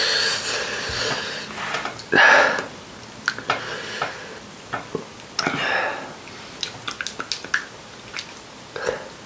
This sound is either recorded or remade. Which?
recorded